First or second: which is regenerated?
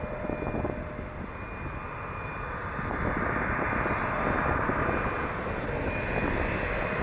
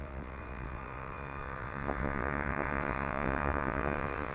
second